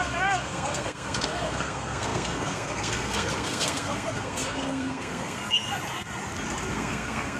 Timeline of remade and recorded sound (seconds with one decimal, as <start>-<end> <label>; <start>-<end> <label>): 0.0-5.7 remade; 5.7-6.7 recorded; 6.7-7.4 remade